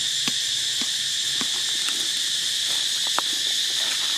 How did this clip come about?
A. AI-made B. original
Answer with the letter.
A